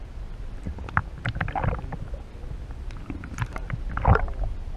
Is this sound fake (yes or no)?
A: yes